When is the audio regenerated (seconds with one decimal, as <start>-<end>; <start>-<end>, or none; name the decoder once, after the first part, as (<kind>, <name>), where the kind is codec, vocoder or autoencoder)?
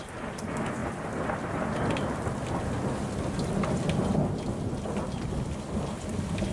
none